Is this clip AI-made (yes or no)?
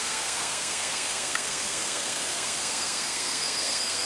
yes